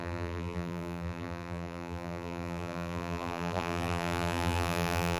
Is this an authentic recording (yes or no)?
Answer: no